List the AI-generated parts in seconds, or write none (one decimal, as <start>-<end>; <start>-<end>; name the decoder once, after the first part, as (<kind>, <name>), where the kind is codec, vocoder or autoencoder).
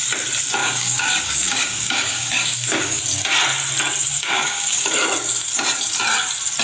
0.6-3.0 (codec, DAC); 4.0-4.8